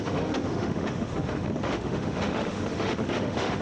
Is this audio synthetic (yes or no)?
yes